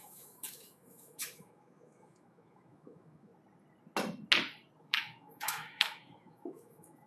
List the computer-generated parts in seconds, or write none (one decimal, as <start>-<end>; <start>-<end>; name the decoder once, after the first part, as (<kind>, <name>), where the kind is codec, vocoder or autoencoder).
0.0-3.3 (autoencoder, DAC-VAE); 4.8-7.1